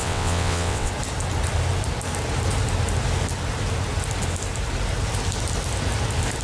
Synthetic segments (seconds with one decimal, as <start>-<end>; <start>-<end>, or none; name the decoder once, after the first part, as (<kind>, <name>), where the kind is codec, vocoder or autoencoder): 0.0-0.9 (vocoder, WaveNeXt)